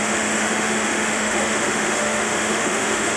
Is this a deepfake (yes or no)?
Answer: yes